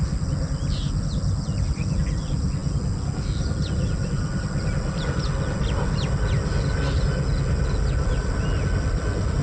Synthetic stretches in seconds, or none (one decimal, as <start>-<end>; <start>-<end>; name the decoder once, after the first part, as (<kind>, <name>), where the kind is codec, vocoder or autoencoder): none